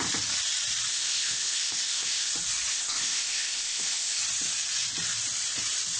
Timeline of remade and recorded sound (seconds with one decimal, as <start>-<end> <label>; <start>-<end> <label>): 0.0-0.9 recorded; 0.9-2.3 remade; 2.3-2.7 recorded; 2.7-4.2 remade; 4.2-6.0 recorded